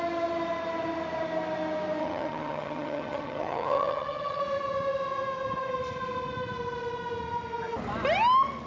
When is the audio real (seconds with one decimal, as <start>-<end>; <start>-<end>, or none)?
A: 0.0-2.0; 4.4-8.7